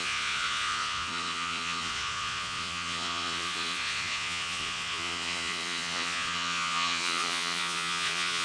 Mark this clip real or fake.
fake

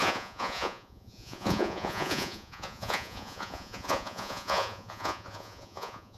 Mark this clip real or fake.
fake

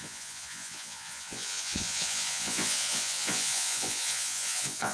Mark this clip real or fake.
fake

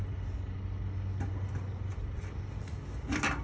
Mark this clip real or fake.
real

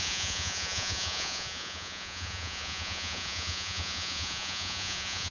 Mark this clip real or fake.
fake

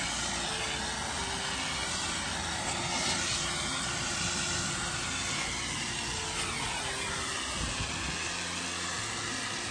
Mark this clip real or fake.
real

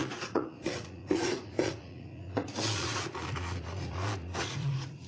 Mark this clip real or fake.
fake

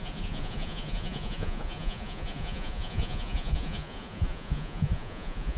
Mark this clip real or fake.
fake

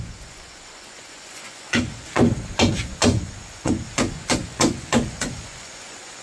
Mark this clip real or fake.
fake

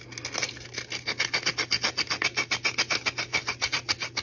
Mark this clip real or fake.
real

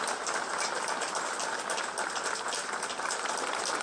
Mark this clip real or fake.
real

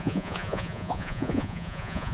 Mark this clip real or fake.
fake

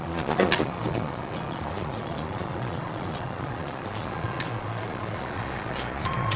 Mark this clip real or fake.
fake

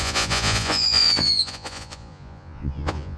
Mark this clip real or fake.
fake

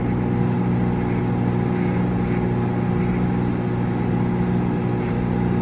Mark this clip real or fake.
real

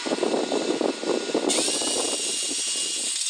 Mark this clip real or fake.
real